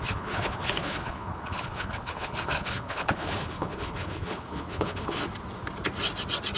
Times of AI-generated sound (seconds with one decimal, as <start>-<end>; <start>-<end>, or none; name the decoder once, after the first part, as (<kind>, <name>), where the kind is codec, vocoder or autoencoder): 0.0-5.2 (codec, HILCodec)